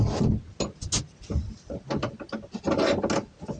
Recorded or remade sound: recorded